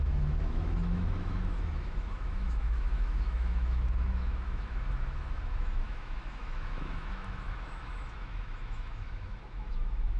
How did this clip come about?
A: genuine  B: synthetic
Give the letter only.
B